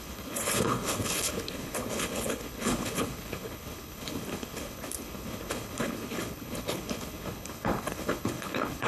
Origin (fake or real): fake